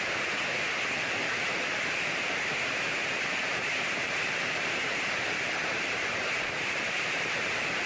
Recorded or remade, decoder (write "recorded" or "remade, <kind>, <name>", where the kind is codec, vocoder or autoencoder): remade, vocoder, BigVGAN v2